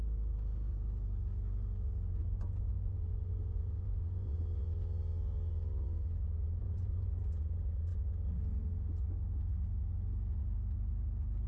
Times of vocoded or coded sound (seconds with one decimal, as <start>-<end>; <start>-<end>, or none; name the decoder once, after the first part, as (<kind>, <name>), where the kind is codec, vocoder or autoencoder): 2.1-4.4 (vocoder, Vocos); 6.6-7.2

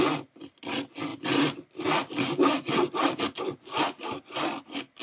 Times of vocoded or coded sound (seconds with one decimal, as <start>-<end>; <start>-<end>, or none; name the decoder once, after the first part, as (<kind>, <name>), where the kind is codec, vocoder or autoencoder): none

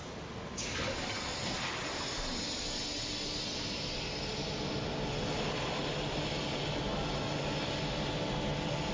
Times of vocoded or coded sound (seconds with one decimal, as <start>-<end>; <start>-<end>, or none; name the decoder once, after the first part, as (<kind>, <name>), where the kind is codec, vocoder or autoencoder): none

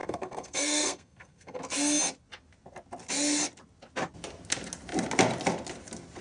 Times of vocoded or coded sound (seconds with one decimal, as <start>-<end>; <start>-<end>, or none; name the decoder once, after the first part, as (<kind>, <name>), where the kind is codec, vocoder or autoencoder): 0.0-1.6 (codec, SNAC)

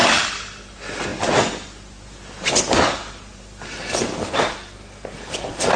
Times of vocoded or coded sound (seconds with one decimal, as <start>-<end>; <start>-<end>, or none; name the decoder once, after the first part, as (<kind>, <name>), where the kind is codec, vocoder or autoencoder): 0.0-0.6 (vocoder, BigVGAN v2); 3.3-5.8

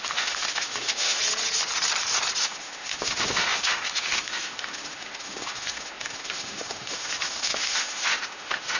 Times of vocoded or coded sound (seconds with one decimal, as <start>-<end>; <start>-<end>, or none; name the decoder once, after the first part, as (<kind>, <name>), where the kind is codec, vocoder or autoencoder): 0.0-1.2 (autoencoder, DAC-VAE); 2.4-8.8

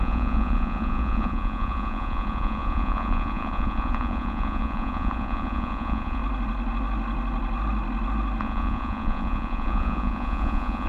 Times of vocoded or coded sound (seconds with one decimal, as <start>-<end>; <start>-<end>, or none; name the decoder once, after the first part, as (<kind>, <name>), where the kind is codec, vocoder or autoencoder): 0.0-6.2 (vocoder, Vocos); 8.4-10.9